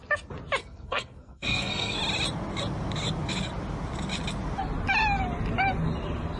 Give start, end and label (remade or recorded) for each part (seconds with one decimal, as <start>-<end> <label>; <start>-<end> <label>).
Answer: 0.0-0.6 recorded; 0.6-2.0 remade; 2.0-6.4 recorded